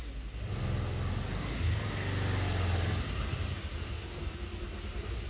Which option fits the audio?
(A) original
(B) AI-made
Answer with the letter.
A